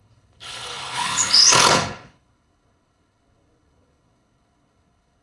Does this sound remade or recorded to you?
remade